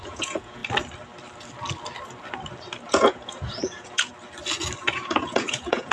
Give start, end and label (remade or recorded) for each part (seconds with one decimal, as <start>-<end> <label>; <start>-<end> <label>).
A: 0.0-0.6 remade; 0.6-2.9 recorded; 2.9-4.1 remade; 4.1-4.9 recorded; 4.9-5.9 remade

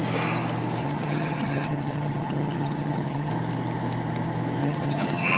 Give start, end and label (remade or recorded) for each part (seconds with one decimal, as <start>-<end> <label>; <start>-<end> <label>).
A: 0.0-0.8 recorded; 0.8-3.3 remade; 3.3-4.6 recorded; 4.6-5.4 remade